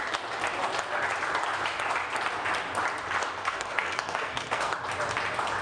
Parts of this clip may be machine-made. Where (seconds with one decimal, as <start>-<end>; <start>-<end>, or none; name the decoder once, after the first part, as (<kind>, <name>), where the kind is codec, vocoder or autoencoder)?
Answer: 3.4-4.7 (codec, SNAC)